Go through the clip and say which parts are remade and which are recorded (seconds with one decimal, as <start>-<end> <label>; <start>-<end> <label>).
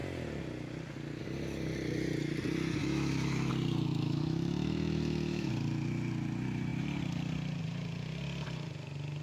0.0-2.8 recorded; 2.8-3.5 remade; 3.5-3.9 recorded; 3.9-5.5 remade; 5.5-9.2 recorded